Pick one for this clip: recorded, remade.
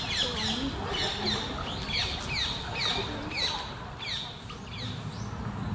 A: recorded